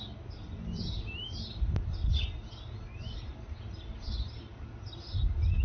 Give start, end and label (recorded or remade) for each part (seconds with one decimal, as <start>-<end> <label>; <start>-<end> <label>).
0.0-5.6 recorded